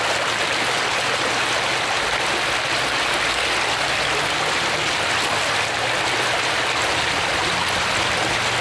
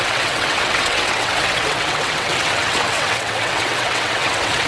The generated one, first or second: second